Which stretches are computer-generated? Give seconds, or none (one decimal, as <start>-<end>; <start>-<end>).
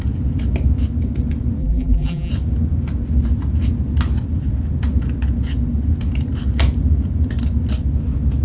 1.6-2.3